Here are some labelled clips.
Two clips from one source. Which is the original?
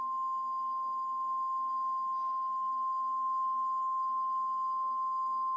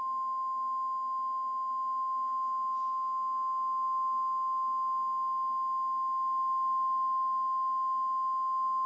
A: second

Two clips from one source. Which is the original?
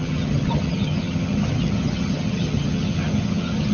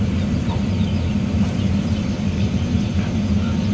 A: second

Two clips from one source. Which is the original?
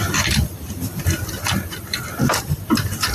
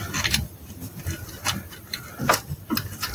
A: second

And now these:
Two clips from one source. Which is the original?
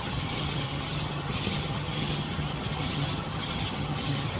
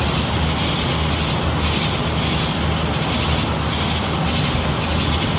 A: second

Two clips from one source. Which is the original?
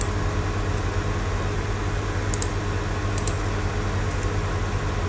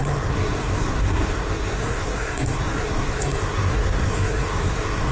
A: first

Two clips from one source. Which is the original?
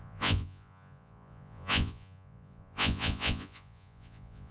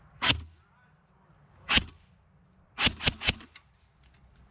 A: second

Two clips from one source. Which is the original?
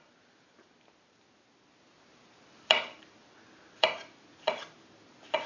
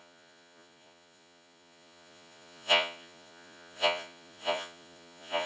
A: first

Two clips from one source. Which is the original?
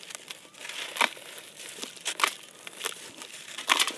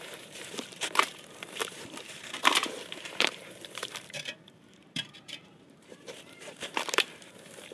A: first